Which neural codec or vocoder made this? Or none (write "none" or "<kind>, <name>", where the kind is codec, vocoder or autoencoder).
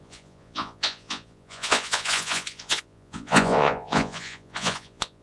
vocoder, Vocos